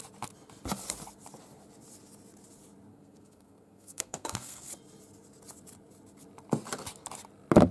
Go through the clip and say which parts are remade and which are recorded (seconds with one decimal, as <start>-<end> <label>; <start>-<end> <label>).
0.0-2.9 recorded; 2.9-4.7 remade; 4.7-7.7 recorded